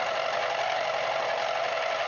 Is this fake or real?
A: real